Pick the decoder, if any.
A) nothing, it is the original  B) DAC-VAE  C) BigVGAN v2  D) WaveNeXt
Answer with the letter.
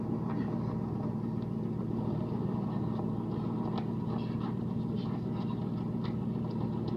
A